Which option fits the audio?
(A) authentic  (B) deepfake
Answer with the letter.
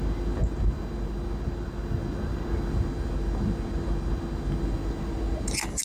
A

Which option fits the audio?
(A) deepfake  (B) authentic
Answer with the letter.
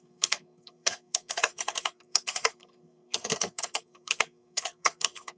A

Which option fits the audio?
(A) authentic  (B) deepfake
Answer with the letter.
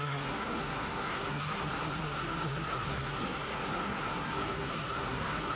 B